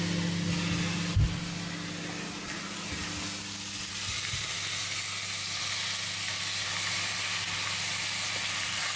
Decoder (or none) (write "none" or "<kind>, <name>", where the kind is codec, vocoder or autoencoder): none